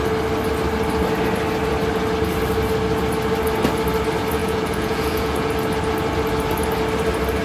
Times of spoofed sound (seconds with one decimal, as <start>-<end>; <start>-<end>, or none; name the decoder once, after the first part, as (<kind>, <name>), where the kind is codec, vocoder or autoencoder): 4.4-5.5 (vocoder, Vocos)